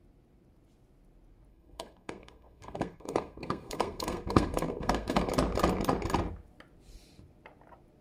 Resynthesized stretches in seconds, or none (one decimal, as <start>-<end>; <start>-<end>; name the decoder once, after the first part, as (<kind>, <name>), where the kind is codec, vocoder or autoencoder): 1.5-5.3 (codec, SNAC)